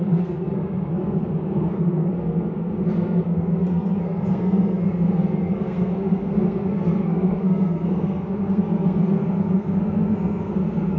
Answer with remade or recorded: remade